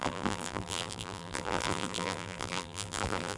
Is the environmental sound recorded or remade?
remade